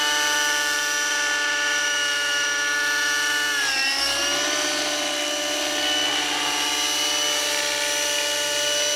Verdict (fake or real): real